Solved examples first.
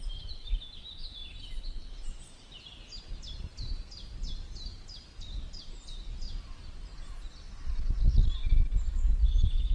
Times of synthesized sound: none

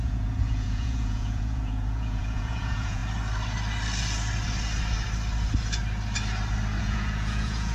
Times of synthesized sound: 0.0-3.0 (vocoder, Vocos); 6.8-7.7

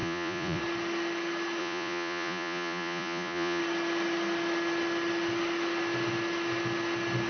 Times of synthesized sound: 0.0-0.6 (vocoder, Vocos); 1.6-3.6